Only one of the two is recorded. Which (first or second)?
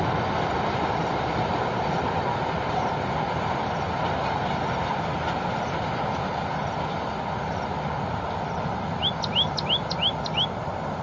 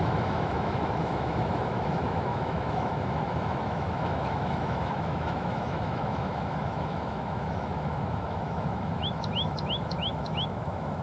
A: first